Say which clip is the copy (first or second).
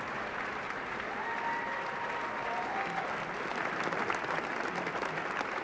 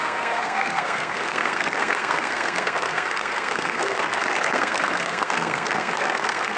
second